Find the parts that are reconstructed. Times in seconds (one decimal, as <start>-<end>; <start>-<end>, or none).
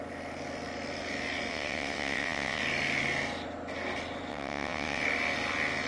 1.5-2.6; 4.3-5.0